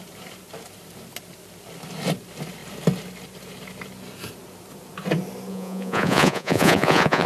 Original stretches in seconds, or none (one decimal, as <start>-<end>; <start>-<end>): 0.0-5.5